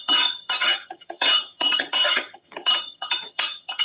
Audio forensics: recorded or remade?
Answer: remade